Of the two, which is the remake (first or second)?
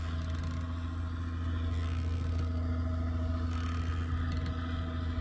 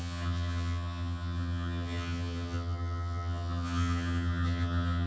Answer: second